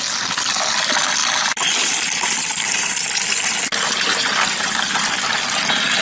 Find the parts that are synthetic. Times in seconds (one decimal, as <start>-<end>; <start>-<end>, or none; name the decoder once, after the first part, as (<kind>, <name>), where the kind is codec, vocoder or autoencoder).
none